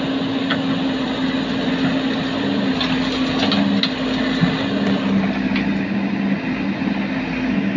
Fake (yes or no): no